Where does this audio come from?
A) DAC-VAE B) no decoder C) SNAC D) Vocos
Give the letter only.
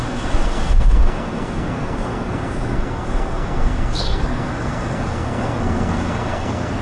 C